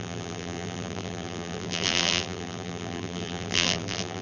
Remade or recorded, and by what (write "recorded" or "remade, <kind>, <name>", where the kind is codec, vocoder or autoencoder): remade, vocoder, BigVGAN v2